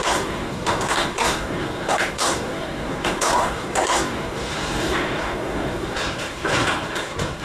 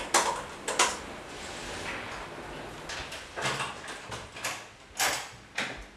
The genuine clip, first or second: second